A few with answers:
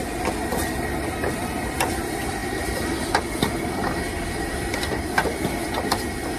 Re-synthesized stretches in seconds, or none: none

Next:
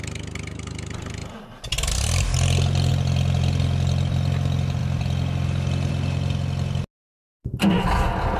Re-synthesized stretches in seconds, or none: none

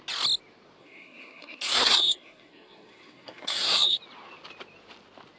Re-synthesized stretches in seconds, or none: 0.8-4.0 (codec, SNAC)

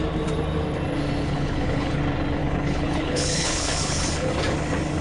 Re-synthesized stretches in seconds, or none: 1.2-2.0 (codec, HILCodec); 2.4-4.3

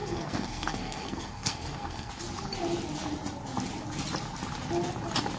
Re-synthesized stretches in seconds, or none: 0.0-2.1 (codec, SNAC)